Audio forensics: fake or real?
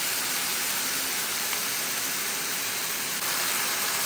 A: fake